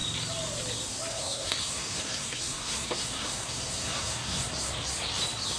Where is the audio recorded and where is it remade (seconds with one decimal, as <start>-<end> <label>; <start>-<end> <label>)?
0.0-1.1 recorded; 1.1-4.5 remade; 4.5-5.6 recorded